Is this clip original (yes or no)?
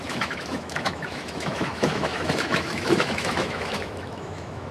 no